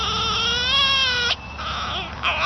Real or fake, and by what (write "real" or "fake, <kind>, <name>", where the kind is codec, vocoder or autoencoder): real